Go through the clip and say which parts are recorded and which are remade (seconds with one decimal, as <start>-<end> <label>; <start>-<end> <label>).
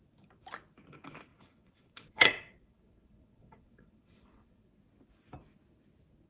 0.0-1.3 recorded; 1.3-4.7 remade; 4.7-6.3 recorded